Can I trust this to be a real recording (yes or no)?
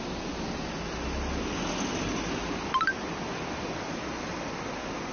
yes